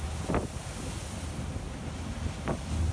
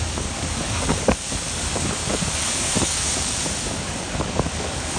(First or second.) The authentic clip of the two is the first